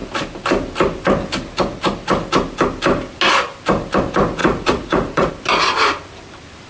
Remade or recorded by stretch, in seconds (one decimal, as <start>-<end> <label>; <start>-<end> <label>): 0.0-4.4 recorded; 4.4-5.3 remade; 5.3-6.7 recorded